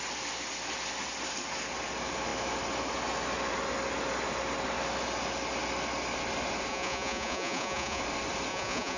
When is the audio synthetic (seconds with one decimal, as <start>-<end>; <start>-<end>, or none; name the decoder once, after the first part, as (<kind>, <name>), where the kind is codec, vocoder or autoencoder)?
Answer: 6.7-8.0 (vocoder, Vocos); 8.5-9.0